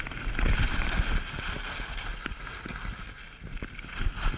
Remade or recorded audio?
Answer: recorded